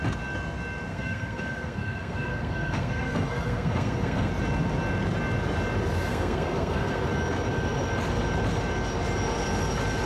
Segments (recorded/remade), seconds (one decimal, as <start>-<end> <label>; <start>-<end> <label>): 0.0-0.9 recorded; 0.9-4.3 remade; 4.3-6.1 recorded; 6.1-7.0 remade; 7.0-10.1 recorded